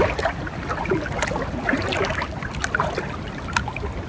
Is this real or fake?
real